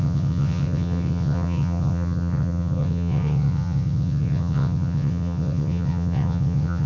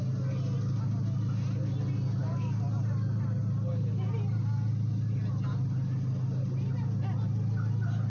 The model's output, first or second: first